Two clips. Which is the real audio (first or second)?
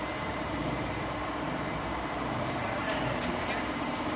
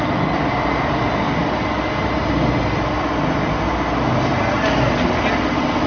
second